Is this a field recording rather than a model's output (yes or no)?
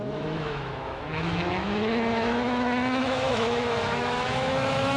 no